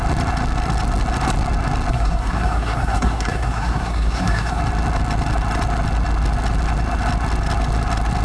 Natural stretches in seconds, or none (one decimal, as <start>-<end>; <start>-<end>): 0.0-1.9; 4.6-8.2